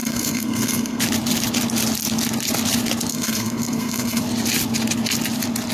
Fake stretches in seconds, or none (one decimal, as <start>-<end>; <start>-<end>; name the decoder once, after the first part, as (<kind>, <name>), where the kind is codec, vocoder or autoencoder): 0.0-1.0 (codec, SNAC); 3.1-4.2